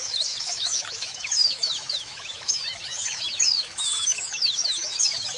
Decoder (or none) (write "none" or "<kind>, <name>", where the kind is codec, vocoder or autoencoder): autoencoder, DAC-VAE